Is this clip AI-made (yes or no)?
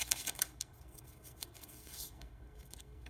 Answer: yes